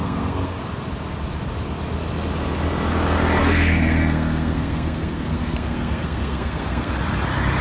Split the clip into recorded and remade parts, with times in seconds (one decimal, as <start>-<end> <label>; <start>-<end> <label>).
0.0-0.6 remade; 0.6-3.4 recorded; 3.4-6.9 remade; 6.9-7.6 recorded